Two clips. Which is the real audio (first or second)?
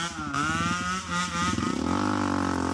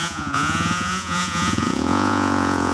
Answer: first